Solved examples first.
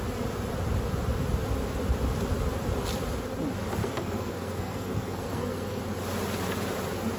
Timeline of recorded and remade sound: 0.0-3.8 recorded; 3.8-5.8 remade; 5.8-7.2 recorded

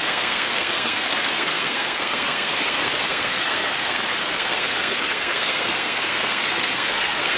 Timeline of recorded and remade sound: 0.0-7.4 remade

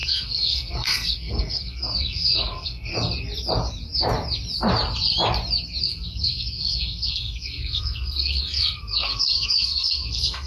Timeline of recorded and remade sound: 0.0-2.9 remade; 2.9-5.8 recorded; 5.8-10.5 remade